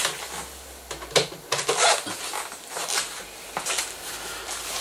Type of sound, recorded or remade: recorded